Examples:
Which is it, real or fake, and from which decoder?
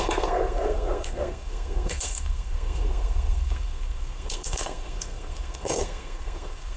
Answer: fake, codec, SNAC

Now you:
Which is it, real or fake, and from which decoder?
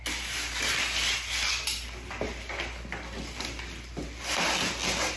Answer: real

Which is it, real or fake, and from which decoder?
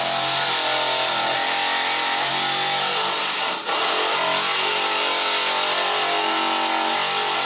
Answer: real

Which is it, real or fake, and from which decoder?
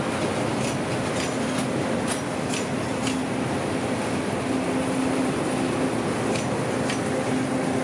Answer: real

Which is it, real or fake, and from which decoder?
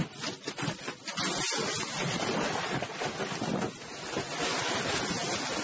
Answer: real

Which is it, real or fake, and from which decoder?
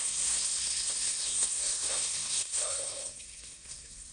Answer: fake, codec, SNAC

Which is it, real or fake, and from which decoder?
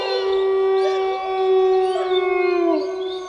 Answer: real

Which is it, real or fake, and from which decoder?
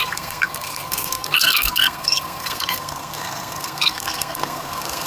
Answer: fake, codec, SNAC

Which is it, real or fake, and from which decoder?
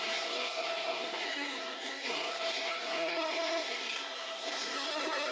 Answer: fake, codec, SNAC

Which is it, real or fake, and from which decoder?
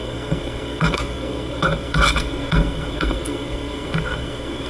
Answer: fake, codec, SNAC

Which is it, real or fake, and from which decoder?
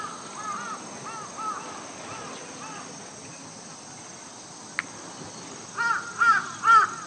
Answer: real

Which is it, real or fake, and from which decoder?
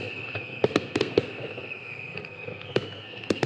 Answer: fake, codec, SNAC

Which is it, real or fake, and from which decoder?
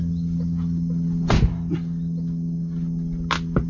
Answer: real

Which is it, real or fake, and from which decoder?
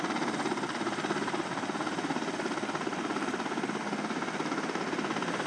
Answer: real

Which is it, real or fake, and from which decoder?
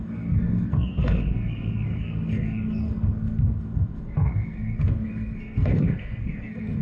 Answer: fake, codec, SNAC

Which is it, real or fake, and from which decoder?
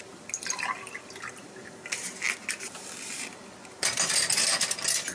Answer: real